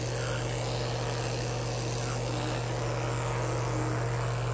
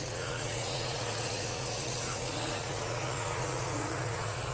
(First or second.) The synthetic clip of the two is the second